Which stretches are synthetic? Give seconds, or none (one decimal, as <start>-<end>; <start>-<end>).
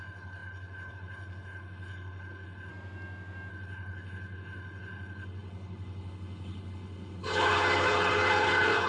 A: 0.0-2.7; 3.5-8.9